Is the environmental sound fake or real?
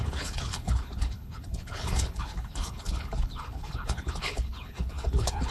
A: fake